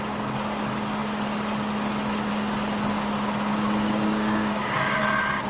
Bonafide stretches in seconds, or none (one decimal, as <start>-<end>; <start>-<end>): 0.0-3.5; 5.0-5.5